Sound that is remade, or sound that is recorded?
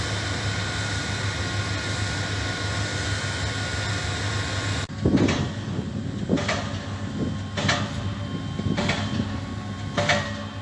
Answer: recorded